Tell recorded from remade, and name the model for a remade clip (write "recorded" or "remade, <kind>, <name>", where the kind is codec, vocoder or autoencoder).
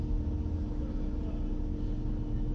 recorded